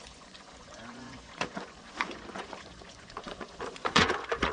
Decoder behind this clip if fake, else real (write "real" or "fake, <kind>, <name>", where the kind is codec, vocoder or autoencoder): fake, vocoder, Vocos